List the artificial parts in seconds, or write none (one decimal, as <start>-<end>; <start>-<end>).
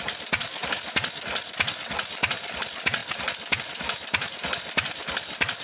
0.4-0.9